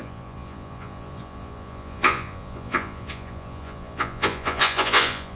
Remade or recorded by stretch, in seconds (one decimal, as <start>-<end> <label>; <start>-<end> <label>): 0.0-5.4 remade